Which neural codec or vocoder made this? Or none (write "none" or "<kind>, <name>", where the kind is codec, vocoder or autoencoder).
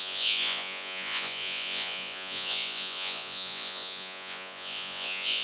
vocoder, Vocos